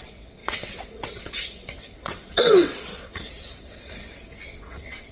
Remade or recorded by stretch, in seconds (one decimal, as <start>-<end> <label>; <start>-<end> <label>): 0.0-5.1 remade